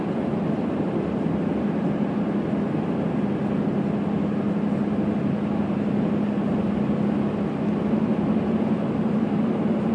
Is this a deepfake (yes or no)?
no